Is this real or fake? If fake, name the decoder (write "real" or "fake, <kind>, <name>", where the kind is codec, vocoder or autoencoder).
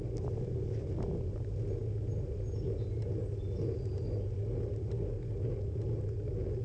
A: real